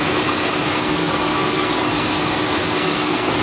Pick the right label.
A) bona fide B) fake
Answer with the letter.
B